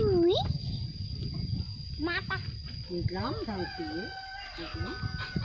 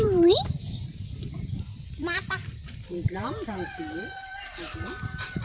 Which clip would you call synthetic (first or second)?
second